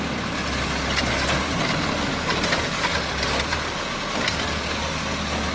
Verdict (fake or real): real